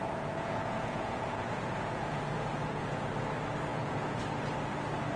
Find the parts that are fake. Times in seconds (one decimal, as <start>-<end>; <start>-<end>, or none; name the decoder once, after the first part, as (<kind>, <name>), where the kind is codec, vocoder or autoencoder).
0.0-3.1 (vocoder, Vocos); 3.7-4.2